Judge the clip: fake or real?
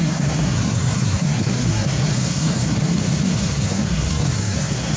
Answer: fake